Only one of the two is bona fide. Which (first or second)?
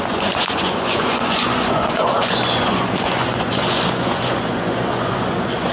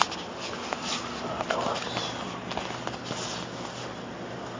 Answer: second